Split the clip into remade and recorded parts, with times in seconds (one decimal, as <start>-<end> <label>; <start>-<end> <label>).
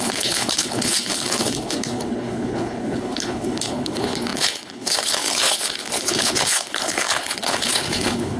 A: 0.0-8.4 remade